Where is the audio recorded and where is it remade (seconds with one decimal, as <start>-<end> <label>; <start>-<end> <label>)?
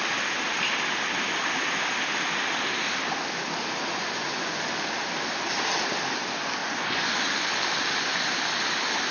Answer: 0.0-4.0 recorded; 4.0-4.7 remade; 4.7-6.6 recorded; 6.6-7.5 remade; 7.5-9.1 recorded